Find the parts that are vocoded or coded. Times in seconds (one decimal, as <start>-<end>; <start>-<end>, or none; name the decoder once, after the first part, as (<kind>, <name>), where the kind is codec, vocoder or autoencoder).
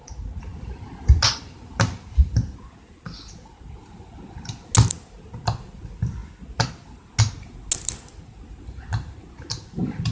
none